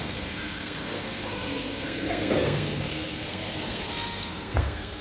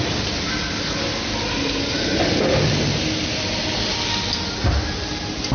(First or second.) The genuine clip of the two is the second